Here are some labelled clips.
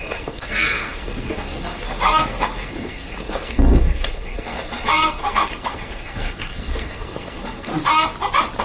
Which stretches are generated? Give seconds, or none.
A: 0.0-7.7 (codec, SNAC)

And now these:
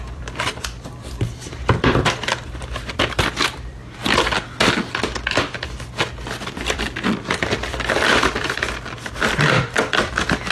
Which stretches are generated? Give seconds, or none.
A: 0.0-3.8 (vocoder, BigVGAN v2); 6.5-10.5

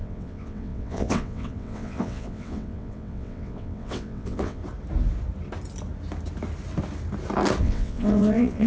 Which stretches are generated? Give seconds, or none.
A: 0.0-4.6 (vocoder, WaveNeXt); 7.6-8.7

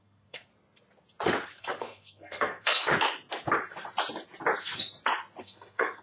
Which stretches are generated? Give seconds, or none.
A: 0.0-0.5 (codec, SNAC); 1.6-2.8; 5.4-6.0

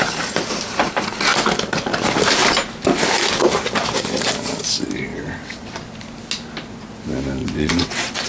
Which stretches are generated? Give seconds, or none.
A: 5.1-5.7 (vocoder, WaveNeXt); 7.4-8.3

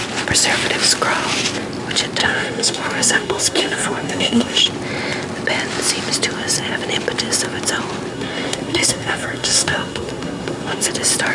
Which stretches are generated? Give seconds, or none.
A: 2.2-4.6 (codec, SNAC); 8.1-10.9

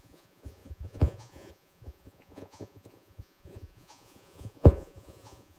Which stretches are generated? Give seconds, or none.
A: 0.0-5.6 (vocoder, Vocos)